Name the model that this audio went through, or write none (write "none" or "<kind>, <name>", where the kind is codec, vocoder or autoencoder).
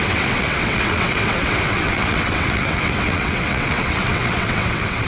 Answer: vocoder, WaveNeXt